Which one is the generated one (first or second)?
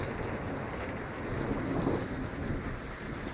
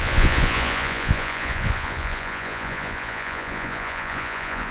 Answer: second